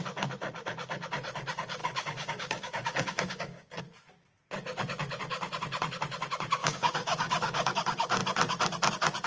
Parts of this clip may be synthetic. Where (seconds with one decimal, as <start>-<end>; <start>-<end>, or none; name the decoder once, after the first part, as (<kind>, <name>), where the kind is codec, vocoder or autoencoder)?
1.8-3.8 (codec, DAC); 6.6-7.7